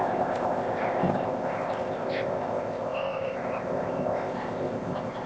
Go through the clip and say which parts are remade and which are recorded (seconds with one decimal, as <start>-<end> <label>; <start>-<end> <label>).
0.0-5.3 remade